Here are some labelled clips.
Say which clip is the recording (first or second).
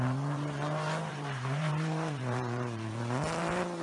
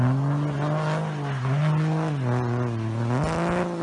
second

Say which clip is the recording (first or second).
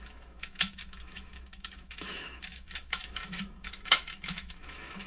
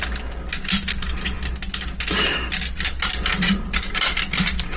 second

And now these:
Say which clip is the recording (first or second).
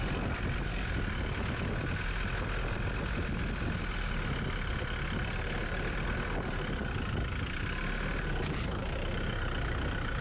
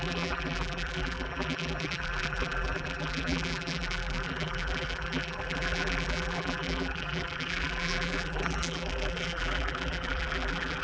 first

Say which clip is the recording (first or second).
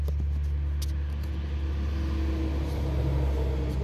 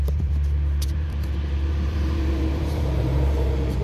first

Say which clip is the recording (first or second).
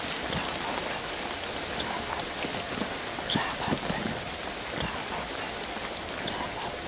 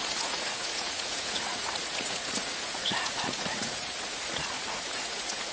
first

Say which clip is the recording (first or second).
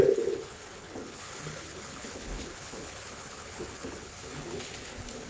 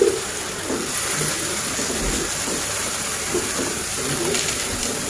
second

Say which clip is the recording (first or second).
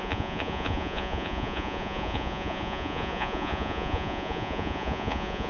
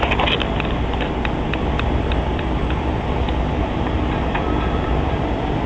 second